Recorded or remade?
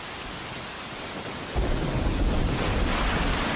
recorded